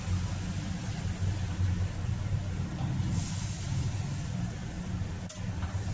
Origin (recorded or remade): recorded